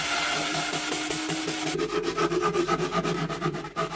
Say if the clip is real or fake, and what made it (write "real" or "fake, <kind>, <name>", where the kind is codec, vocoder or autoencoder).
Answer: real